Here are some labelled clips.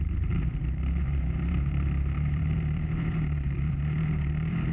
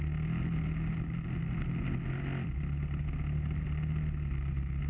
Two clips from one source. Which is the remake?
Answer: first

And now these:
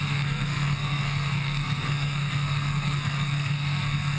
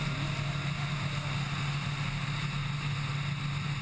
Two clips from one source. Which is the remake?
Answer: first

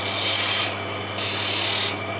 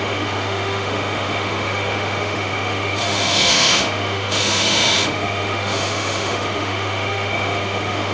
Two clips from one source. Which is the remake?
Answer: second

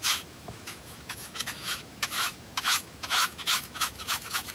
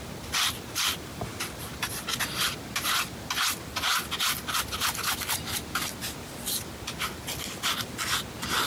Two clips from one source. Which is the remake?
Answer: first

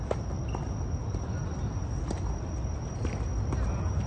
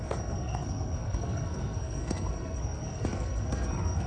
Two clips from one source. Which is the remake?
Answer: second